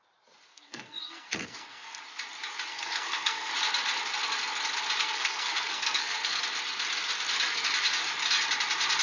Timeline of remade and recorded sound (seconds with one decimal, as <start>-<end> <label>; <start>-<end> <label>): 0.0-0.5 recorded; 0.5-2.0 remade; 2.0-2.7 recorded; 2.7-3.5 remade; 3.5-5.0 recorded; 5.0-6.4 remade; 6.4-9.0 recorded